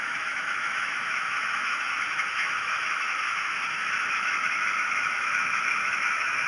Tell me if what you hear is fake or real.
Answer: fake